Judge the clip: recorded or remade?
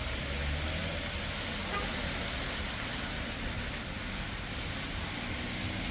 recorded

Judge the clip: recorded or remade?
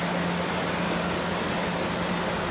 recorded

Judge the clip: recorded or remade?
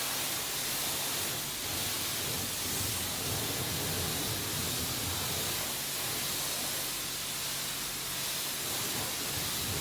recorded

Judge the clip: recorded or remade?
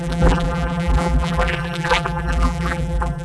remade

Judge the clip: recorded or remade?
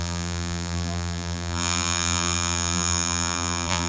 remade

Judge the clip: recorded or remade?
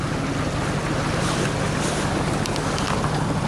recorded